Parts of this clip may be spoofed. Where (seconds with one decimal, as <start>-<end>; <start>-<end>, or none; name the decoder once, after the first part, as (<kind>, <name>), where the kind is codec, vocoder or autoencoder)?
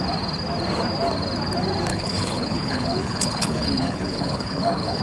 1.9-5.0 (codec, HILCodec)